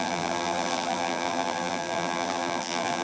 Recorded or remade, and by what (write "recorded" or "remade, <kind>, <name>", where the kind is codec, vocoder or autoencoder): remade, vocoder, BigVGAN v2